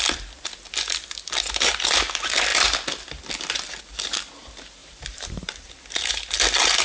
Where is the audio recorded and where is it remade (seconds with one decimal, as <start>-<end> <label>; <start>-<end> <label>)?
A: 0.0-4.8 recorded; 4.8-5.7 remade; 5.7-6.8 recorded